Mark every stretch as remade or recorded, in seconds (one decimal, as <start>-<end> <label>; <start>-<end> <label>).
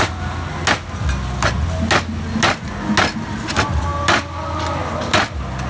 0.0-5.7 recorded